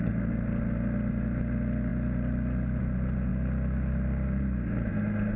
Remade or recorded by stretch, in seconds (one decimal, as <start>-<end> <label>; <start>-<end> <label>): 0.0-5.4 recorded